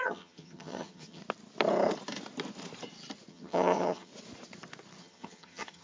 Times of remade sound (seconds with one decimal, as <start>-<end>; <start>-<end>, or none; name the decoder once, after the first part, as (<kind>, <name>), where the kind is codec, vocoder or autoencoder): 0.0-1.2 (vocoder, HiFi-GAN); 3.3-4.1; 5.0-5.8